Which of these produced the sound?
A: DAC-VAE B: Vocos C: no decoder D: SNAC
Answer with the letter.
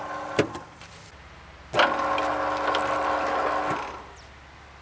C